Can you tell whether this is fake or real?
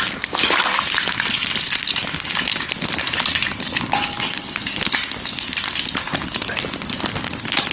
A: real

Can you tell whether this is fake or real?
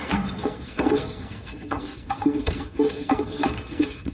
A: fake